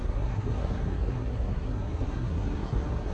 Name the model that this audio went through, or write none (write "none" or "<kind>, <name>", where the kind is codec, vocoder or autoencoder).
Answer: codec, SNAC